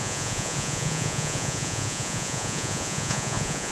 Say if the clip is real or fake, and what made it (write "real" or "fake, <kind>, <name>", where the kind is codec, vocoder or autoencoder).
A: fake, vocoder, Vocos